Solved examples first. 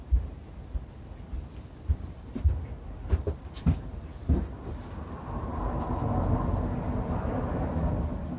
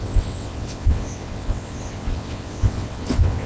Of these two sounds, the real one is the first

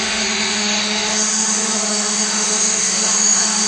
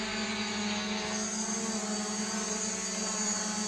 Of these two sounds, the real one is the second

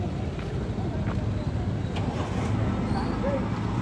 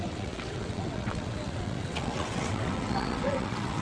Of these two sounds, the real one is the first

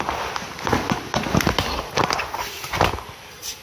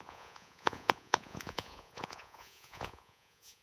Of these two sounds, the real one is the first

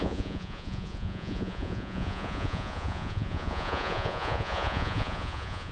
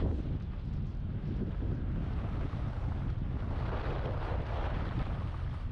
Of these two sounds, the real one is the second